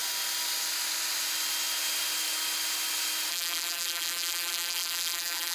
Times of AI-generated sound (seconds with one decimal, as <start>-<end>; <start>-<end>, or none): 3.3-5.5